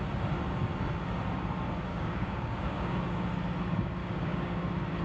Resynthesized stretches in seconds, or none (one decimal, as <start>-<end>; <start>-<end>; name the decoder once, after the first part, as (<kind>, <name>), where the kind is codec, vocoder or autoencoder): 1.9-3.0 (codec, DAC); 4.0-4.6